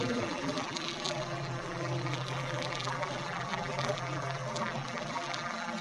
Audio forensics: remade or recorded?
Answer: remade